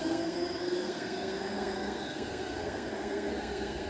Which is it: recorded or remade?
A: remade